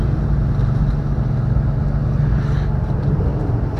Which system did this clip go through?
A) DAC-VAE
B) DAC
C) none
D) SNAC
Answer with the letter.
C